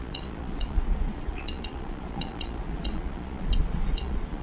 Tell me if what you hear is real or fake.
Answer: fake